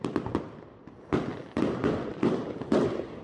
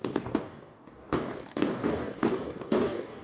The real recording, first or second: first